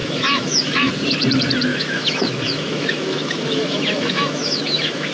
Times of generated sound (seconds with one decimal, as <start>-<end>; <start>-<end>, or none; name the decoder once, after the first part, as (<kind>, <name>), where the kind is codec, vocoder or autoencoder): 0.0-0.9 (autoencoder, DAC-VAE); 1.7-5.1

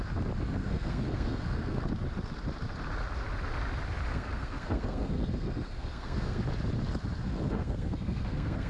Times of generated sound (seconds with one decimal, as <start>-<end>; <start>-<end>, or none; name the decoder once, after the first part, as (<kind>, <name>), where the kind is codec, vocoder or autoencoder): 0.6-1.9 (codec, SNAC); 4.1-6.4; 7.2-8.7